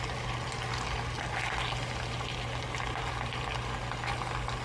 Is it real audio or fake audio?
real